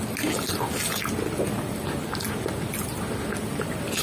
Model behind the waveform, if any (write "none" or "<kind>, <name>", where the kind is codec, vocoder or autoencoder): none